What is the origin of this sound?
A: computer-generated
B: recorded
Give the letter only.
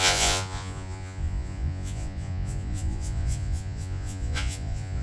A